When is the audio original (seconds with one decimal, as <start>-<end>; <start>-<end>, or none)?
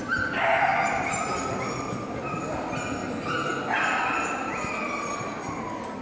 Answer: 0.0-6.0